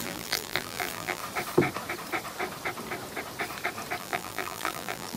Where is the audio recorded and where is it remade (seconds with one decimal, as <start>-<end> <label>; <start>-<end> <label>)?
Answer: 0.0-1.2 remade; 1.2-4.0 recorded; 4.0-5.2 remade